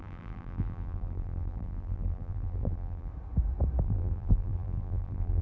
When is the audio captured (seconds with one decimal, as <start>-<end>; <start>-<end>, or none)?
3.1-3.8